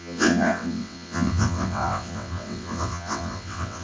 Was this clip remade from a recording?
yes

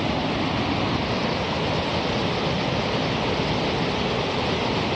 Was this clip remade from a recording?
no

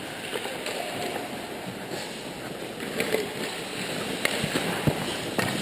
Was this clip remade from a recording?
no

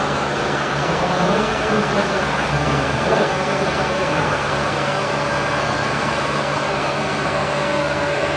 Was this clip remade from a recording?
yes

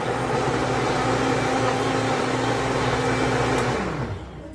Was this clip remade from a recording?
no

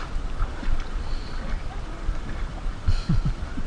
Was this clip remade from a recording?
yes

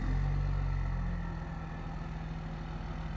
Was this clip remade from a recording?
no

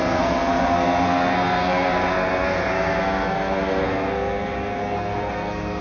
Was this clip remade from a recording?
yes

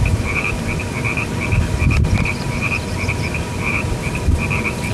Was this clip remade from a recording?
yes